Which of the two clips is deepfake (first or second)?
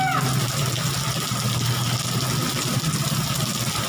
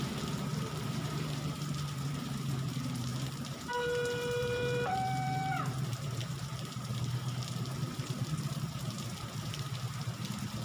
second